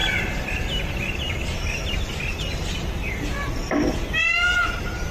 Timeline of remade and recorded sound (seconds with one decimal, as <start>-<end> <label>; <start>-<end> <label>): 0.0-5.1 recorded